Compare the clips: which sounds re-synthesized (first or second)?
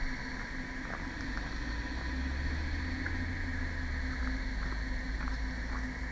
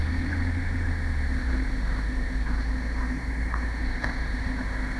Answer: second